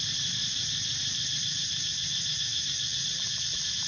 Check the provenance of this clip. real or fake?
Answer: fake